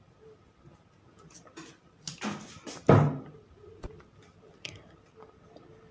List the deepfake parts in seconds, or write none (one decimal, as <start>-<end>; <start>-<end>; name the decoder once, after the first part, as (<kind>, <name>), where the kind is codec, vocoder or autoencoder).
none